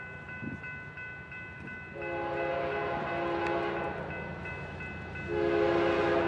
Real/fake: real